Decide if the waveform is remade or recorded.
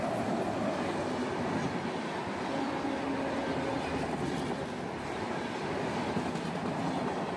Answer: recorded